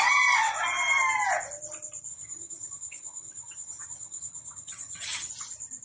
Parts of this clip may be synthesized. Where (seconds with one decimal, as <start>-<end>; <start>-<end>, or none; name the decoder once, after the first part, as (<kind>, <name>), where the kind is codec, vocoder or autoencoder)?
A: 2.1-5.3 (vocoder, HiFi-GAN)